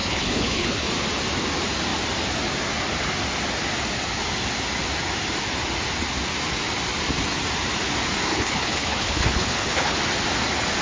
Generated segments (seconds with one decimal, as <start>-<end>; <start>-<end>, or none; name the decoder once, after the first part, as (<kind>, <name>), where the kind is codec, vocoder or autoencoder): 0.0-0.9 (codec, HILCodec); 8.3-10.0